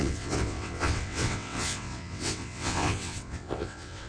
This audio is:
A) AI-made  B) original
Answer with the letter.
A